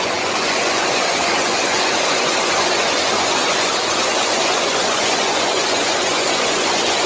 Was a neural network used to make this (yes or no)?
yes